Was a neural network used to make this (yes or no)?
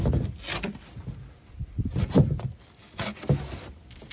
no